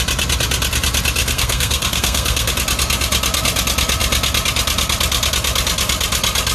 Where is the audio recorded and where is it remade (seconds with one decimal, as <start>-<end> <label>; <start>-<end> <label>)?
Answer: 0.0-1.2 recorded; 1.2-2.5 remade; 2.5-6.5 recorded